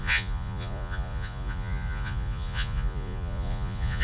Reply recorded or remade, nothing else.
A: remade